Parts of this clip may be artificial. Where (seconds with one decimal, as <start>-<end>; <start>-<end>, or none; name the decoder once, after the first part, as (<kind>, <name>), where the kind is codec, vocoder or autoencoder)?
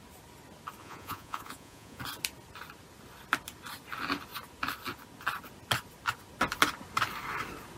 0.8-2.0 (vocoder, Vocos)